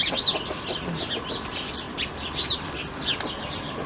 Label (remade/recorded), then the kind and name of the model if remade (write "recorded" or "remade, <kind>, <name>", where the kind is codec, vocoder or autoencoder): recorded